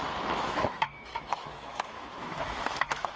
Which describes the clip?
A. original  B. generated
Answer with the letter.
B